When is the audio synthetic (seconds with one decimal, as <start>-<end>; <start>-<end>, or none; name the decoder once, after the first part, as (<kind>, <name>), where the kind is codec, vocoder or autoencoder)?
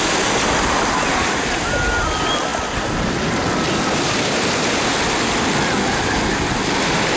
none